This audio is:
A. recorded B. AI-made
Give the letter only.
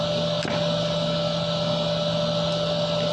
A